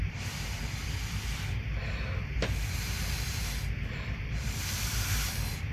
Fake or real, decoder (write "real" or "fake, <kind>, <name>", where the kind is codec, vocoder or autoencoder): fake, vocoder, BigVGAN v2